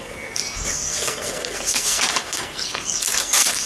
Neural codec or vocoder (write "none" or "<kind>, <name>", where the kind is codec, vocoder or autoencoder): codec, SNAC